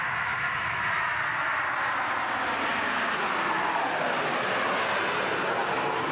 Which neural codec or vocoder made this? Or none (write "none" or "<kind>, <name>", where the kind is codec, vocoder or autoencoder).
none